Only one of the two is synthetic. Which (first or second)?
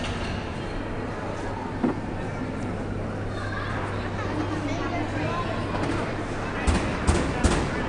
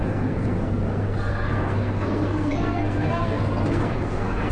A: second